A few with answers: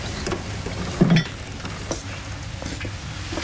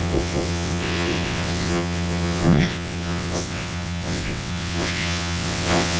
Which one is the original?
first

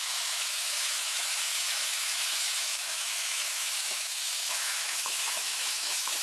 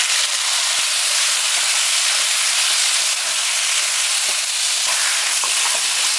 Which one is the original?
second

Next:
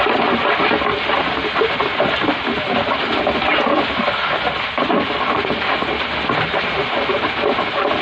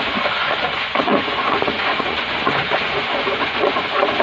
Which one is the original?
first